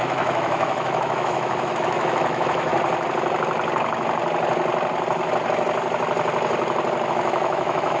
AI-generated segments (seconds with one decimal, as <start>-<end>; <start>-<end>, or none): 0.0-2.7; 7.1-8.0